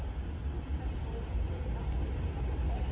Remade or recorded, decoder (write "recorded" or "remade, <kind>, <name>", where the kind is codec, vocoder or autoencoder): recorded